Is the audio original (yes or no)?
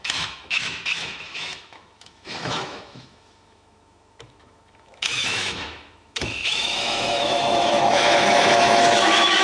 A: no